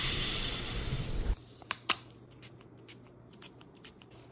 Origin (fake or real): fake